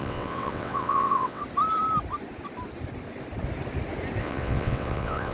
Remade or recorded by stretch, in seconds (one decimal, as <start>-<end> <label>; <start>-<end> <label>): 0.0-1.4 remade; 1.4-4.2 recorded; 4.2-5.3 remade